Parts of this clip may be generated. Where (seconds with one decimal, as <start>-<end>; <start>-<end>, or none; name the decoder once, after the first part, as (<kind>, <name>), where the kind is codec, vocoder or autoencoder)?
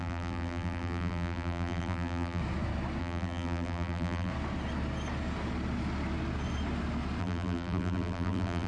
0.0-2.4 (vocoder, BigVGAN v2); 3.0-4.3; 7.2-8.7